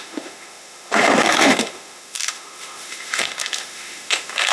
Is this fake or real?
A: fake